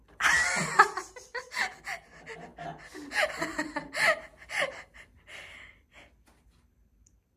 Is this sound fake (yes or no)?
no